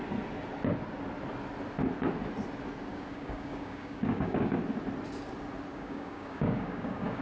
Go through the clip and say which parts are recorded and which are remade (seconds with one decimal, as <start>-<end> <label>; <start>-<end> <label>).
0.0-2.9 recorded; 2.9-4.6 remade; 4.6-5.7 recorded; 5.7-7.2 remade